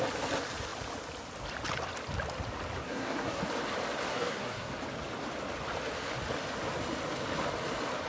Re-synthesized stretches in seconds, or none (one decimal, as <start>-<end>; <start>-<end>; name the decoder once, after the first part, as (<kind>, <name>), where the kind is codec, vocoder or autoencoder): 2.8-3.4 (codec, SNAC); 4.1-4.7